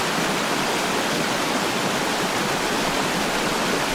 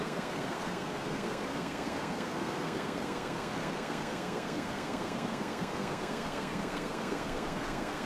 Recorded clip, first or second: first